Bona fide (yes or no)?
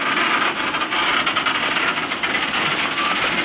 yes